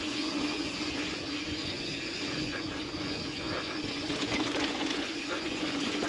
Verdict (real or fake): fake